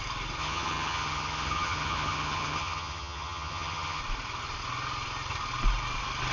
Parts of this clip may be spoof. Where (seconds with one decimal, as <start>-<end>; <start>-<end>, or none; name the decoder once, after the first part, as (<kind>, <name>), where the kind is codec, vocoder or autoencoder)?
0.4-4.0 (vocoder, HiFi-GAN)